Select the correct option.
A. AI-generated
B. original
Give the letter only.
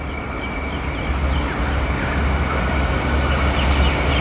B